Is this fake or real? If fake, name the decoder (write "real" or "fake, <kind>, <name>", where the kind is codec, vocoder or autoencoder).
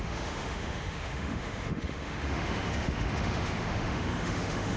fake, autoencoder, DAC-VAE